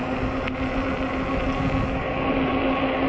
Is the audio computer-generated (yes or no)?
no